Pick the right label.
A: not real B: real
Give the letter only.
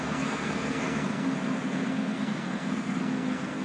A